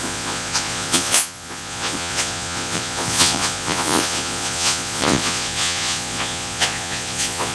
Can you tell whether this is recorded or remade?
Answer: remade